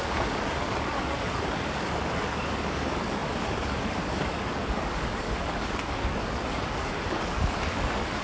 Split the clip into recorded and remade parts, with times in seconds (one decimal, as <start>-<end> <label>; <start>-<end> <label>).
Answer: 0.0-8.2 remade